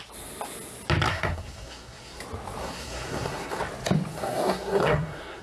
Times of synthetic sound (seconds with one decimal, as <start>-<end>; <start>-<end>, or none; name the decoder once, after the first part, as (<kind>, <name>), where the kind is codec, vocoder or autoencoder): 1.1-2.2 (codec, SNAC); 2.6-3.6; 4.1-5.4